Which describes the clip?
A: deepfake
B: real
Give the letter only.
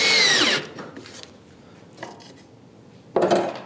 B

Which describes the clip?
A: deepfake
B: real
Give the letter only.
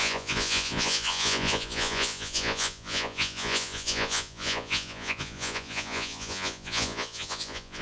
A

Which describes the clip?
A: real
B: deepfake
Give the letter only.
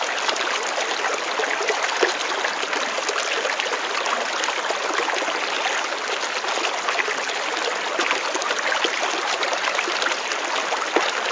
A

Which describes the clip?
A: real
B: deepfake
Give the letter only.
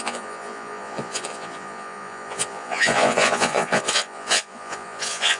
B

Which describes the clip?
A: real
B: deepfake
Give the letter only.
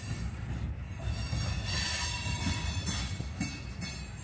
A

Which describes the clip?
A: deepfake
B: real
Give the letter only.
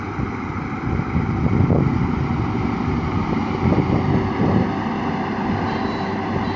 B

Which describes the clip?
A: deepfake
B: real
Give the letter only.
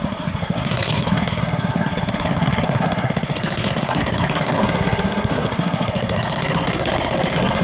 A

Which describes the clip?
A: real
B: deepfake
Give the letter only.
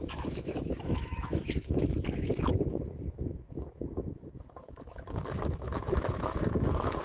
B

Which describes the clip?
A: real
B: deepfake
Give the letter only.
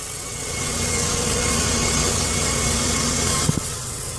B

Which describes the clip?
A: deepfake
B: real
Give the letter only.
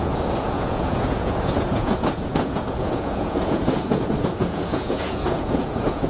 A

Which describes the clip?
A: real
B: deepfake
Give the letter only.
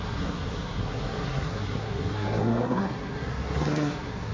B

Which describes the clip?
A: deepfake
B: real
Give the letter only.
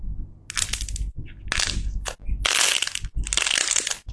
B